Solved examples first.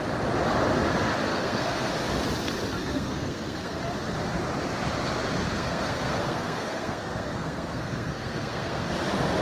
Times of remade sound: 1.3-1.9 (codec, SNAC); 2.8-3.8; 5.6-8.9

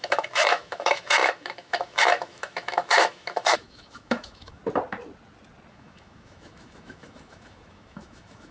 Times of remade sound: 0.0-4.6 (autoencoder, DAC-VAE); 5.7-8.5

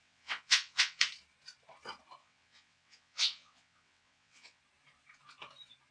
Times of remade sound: 0.0-1.0 (vocoder, WaveNeXt); 2.2-4.6